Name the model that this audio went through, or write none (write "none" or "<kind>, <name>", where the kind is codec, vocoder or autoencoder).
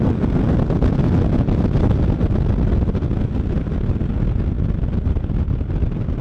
none